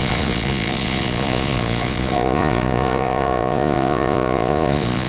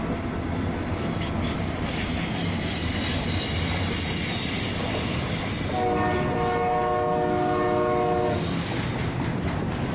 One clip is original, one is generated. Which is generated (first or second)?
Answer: first